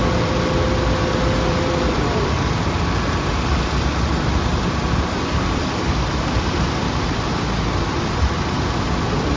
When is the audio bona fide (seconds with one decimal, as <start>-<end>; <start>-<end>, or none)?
0.0-4.5; 8.4-9.4